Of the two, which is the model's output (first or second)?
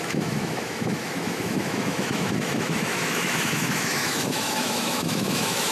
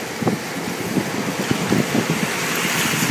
first